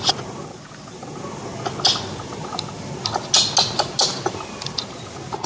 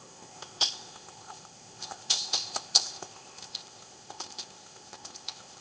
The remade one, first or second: second